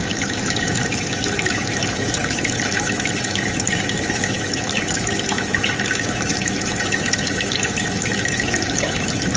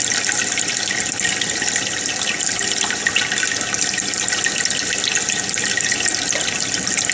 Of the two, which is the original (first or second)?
second